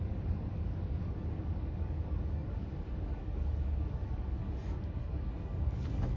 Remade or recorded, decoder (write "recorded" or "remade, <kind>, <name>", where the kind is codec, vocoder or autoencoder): remade, codec, DAC